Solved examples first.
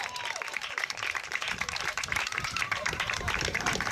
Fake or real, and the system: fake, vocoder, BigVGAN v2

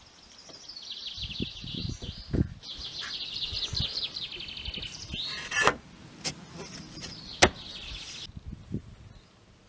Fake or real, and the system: real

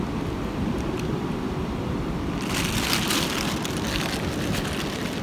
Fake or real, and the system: real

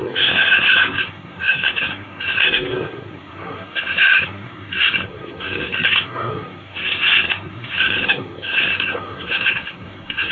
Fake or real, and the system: fake, codec, SNAC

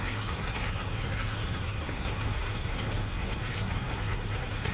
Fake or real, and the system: fake, codec, SNAC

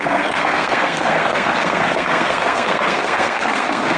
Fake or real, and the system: fake, codec, SNAC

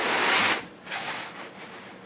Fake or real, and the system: fake, vocoder, BigVGAN v2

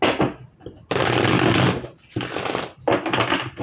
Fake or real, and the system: real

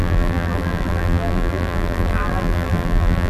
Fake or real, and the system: fake, vocoder, BigVGAN v2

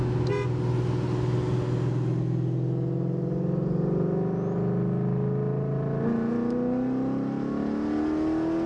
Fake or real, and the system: real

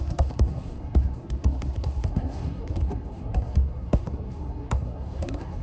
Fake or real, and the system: fake, codec, SNAC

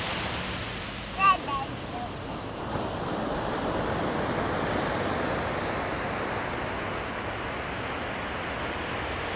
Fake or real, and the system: real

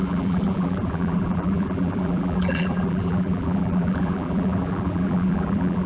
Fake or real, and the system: fake, vocoder, BigVGAN v2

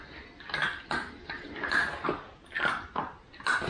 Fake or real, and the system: real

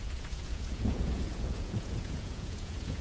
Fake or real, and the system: fake, vocoder, Vocos